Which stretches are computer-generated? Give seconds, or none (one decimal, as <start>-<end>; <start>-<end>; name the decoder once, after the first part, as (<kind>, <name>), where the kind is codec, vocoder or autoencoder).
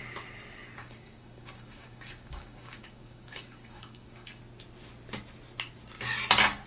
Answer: 0.8-4.4 (codec, DAC)